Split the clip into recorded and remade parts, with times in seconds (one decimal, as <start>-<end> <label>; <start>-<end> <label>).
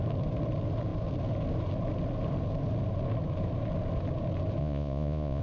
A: 0.0-4.6 recorded; 4.6-5.4 remade